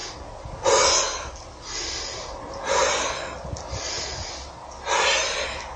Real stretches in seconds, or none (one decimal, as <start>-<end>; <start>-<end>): 0.0-5.8